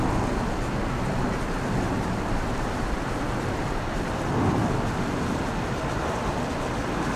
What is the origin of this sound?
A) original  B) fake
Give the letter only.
A